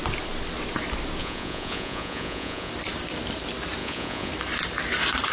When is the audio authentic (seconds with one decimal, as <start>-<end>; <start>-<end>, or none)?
0.0-1.2; 2.7-3.8; 4.3-5.3